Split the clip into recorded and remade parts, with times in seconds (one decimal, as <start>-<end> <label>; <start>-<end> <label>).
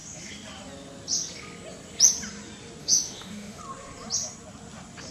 0.0-2.8 recorded; 2.8-3.6 remade; 3.6-5.1 recorded